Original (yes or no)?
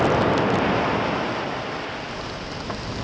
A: yes